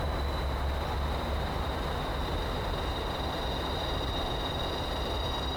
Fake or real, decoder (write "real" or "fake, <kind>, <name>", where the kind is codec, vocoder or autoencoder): real